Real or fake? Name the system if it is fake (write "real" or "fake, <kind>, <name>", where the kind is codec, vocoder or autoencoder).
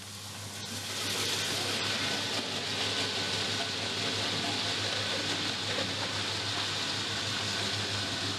real